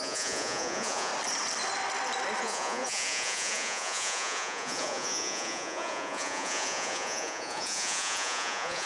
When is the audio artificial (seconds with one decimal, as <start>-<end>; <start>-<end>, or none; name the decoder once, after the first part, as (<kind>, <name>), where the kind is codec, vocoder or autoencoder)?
0.0-1.1 (vocoder, Vocos); 2.4-8.9